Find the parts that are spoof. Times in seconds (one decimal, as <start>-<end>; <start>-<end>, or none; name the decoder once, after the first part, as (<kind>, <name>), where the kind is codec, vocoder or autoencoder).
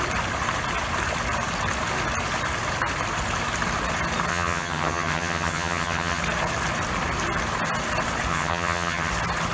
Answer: 4.3-6.2 (vocoder, HiFi-GAN); 8.3-9.1